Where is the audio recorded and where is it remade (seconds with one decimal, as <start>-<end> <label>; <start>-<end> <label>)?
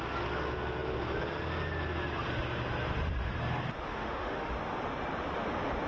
0.0-3.9 recorded; 3.9-4.5 remade; 4.5-5.9 recorded